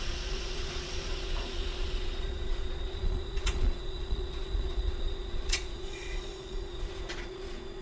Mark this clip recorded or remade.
remade